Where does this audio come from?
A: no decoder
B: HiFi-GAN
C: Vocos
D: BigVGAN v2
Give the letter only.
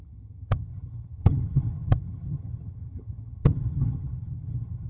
B